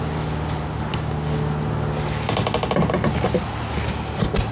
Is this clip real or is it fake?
real